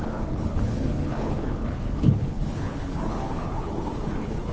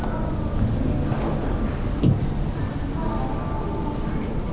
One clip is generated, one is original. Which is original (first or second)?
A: second